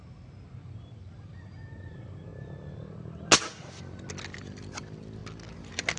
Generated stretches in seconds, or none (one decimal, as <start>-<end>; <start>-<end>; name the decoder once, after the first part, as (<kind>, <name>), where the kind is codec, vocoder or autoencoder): none